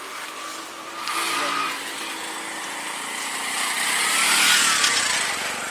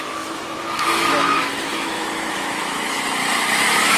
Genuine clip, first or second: first